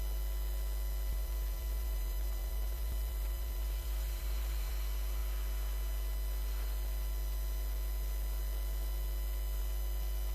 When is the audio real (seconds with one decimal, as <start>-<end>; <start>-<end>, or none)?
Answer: 0.0-1.1; 4.7-10.3